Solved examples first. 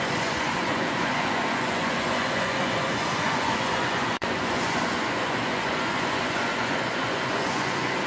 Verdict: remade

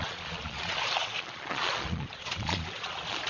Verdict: remade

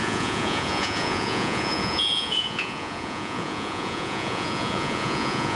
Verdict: remade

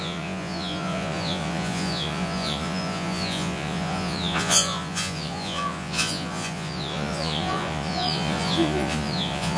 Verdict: remade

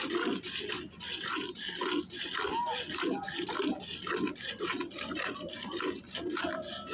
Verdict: recorded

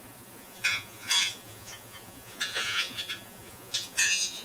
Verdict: remade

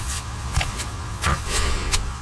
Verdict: remade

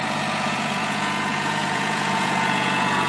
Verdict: remade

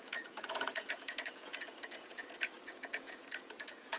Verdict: remade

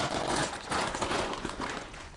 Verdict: remade